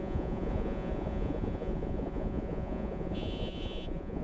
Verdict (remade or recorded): remade